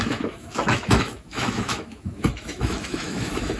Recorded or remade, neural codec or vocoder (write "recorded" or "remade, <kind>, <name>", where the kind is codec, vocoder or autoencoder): remade, autoencoder, DAC-VAE